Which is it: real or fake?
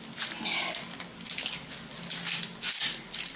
real